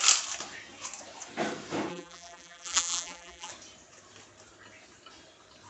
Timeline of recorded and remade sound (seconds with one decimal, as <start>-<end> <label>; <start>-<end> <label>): 0.0-1.9 recorded; 1.9-3.5 remade; 3.5-5.7 recorded